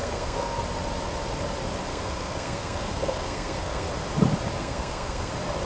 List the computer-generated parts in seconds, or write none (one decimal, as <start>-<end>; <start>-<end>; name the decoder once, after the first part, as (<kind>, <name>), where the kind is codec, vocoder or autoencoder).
0.0-0.6 (codec, SNAC); 1.9-3.9; 4.6-5.3